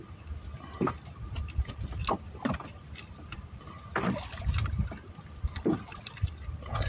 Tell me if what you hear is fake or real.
real